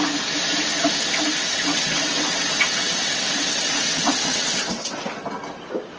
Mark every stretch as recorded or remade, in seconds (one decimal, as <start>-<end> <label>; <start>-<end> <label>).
0.0-1.5 recorded; 1.5-5.1 remade; 5.1-6.0 recorded